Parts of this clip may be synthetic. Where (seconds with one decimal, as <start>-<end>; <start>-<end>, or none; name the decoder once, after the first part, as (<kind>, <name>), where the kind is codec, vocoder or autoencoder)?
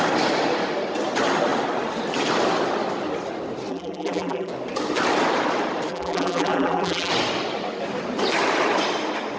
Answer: 3.7-4.5 (vocoder, BigVGAN v2); 5.9-7.1